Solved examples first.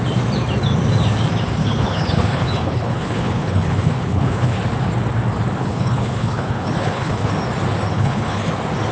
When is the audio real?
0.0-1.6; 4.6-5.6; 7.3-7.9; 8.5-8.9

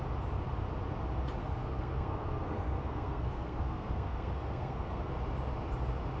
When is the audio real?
0.0-1.4; 5.1-6.2